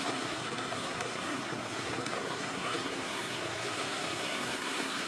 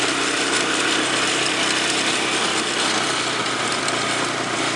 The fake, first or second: first